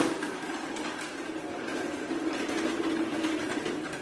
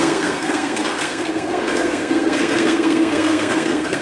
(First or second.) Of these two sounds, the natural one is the first